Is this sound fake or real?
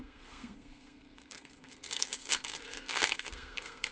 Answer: fake